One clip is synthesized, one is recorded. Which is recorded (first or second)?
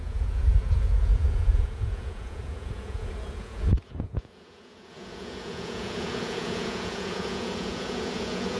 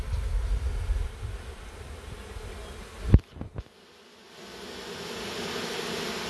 second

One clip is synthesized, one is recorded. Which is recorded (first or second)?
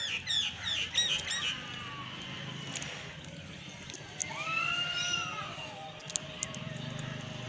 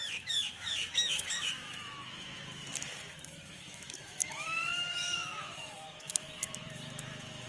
first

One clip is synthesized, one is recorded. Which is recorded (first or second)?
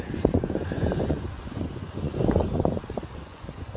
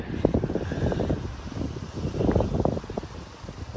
second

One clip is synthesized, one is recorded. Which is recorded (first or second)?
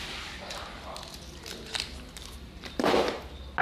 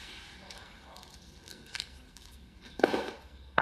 first